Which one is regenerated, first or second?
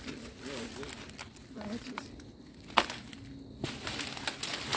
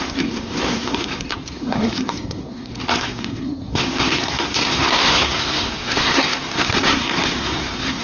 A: second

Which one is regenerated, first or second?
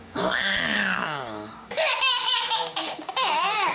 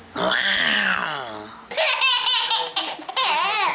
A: first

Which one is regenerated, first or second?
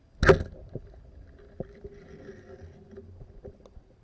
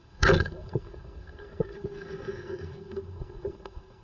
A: second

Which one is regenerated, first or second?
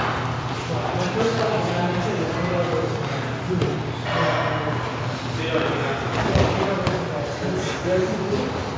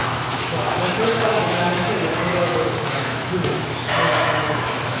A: second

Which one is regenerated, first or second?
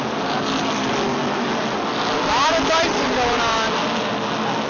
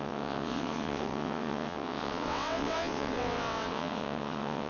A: second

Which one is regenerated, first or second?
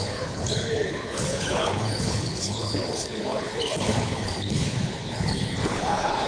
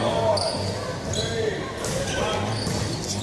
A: first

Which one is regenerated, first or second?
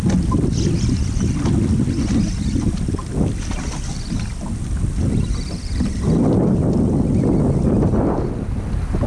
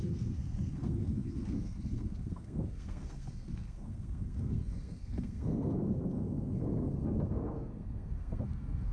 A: second